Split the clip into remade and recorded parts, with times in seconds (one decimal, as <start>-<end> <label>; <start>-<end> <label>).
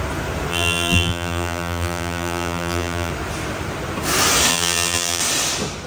0.0-0.5 recorded; 0.5-3.1 remade; 3.1-4.5 recorded; 4.5-5.2 remade; 5.2-5.9 recorded